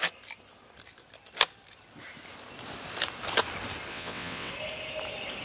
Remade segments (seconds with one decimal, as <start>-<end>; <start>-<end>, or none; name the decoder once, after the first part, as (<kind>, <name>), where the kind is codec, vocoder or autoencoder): 3.9-4.5 (vocoder, WaveNeXt)